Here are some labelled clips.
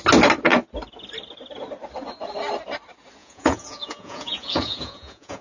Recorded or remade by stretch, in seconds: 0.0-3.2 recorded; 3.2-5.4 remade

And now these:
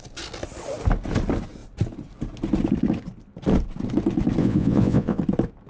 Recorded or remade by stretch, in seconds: 0.0-4.4 recorded; 4.4-5.2 remade; 5.2-5.7 recorded